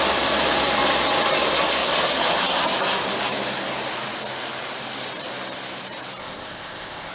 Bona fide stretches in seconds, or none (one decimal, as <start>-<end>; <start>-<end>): 0.0-6.2